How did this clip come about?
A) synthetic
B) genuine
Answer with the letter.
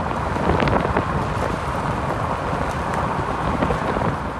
B